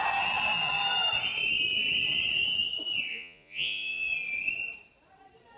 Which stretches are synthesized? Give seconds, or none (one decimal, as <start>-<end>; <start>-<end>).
3.1-4.1